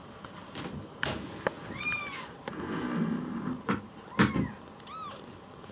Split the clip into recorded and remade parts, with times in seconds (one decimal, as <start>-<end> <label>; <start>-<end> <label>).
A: 0.0-5.7 recorded